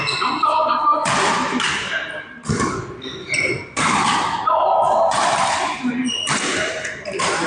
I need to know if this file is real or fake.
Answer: real